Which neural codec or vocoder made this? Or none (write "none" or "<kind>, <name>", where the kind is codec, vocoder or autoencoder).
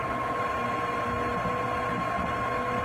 none